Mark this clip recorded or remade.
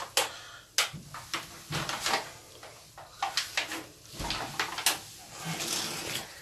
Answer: recorded